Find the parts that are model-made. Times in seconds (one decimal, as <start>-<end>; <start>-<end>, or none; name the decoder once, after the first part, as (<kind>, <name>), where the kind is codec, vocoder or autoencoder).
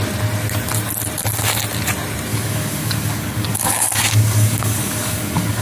2.3-5.6 (codec, DAC)